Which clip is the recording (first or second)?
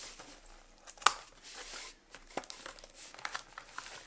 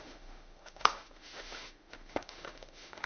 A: first